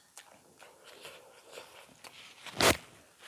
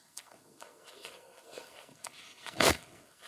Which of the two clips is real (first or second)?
first